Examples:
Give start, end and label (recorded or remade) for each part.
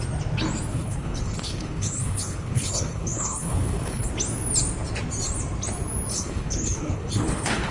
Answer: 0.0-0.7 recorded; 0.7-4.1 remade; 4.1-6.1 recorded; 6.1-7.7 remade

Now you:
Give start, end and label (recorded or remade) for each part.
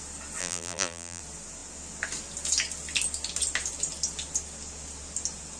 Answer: 0.0-0.4 recorded; 0.4-1.2 remade; 1.2-5.6 recorded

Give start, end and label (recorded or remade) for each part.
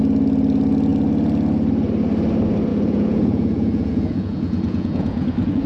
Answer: 0.0-2.7 recorded; 2.7-5.7 remade